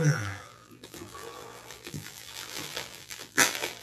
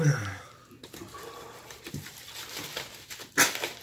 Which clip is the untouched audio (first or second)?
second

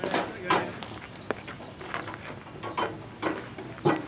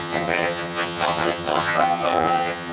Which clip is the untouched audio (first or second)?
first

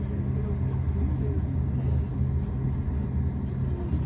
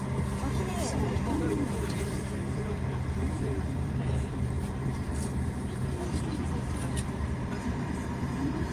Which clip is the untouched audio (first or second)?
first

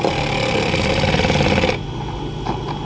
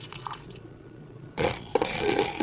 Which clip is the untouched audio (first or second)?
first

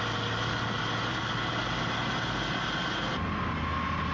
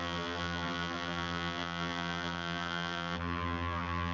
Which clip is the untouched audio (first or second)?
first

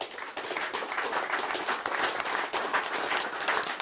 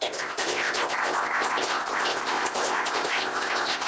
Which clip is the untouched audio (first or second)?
first